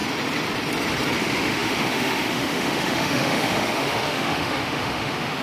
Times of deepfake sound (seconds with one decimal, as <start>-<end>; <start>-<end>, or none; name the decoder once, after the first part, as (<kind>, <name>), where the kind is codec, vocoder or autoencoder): 1.2-5.4 (autoencoder, DAC-VAE)